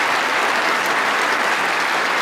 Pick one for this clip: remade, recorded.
recorded